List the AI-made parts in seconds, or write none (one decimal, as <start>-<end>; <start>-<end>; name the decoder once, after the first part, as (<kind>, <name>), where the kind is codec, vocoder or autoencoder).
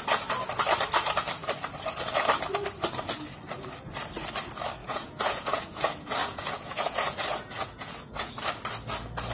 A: 4.8-8.3 (vocoder, Vocos)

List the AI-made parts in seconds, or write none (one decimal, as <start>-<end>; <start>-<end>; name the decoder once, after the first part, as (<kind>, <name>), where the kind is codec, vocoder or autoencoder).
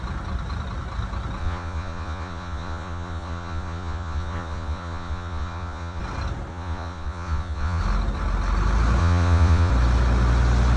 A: 1.4-6.0 (vocoder, Vocos); 6.5-7.8; 9.0-9.7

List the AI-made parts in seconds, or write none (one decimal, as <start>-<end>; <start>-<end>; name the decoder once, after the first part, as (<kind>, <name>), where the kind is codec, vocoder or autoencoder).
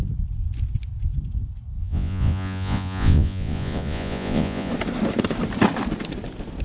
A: 1.8-4.7 (vocoder, Vocos)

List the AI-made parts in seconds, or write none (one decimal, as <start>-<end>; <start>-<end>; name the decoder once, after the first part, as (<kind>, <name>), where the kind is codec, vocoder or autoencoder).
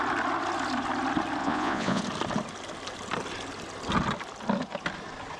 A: 1.4-2.0 (vocoder, Vocos)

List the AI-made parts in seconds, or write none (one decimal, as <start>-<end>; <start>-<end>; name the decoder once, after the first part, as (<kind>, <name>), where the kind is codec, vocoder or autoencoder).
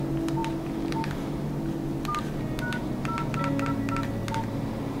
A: none